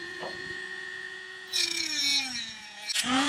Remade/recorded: remade